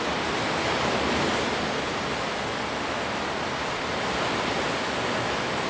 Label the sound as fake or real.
real